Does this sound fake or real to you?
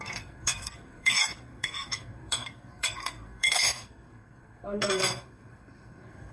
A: fake